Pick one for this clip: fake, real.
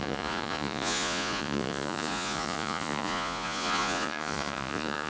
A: fake